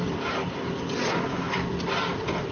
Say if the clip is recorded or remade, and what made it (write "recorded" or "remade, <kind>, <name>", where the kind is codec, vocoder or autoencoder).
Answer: recorded